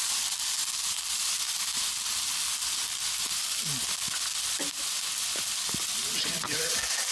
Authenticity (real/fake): real